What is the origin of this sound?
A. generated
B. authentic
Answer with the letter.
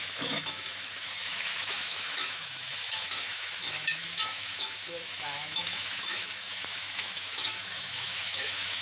A